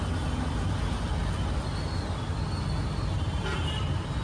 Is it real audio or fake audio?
real